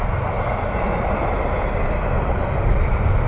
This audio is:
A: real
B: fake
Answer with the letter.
A